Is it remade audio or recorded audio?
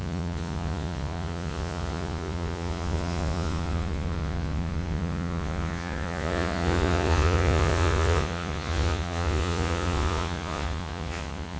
remade